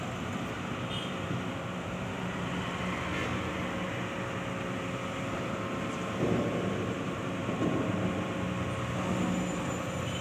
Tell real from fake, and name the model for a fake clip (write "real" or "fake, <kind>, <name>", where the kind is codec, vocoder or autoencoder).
real